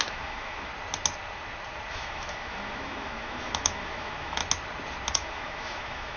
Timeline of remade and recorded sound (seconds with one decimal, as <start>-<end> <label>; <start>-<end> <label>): 0.0-0.7 remade; 0.7-1.9 recorded; 1.9-4.4 remade; 4.4-5.1 recorded; 5.1-6.2 remade